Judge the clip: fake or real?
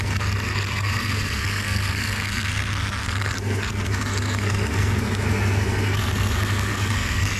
fake